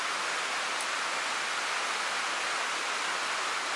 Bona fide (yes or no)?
yes